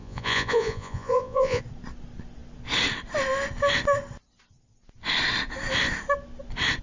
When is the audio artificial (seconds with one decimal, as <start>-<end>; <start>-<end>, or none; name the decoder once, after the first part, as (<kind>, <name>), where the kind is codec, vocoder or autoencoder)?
0.0-1.6 (vocoder, Vocos)

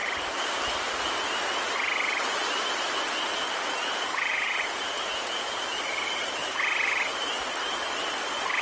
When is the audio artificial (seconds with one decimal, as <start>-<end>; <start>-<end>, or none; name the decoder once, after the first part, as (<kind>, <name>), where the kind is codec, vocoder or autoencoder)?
3.8-5.6 (vocoder, Vocos)